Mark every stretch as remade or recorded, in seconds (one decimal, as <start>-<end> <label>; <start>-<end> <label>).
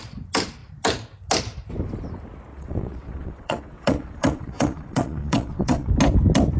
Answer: 0.0-2.5 recorded; 2.5-5.9 remade; 5.9-6.6 recorded